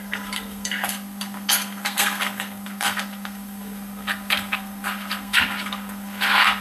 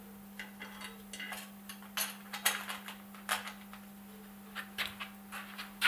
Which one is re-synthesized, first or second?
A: first